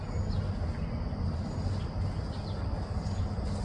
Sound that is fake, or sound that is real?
real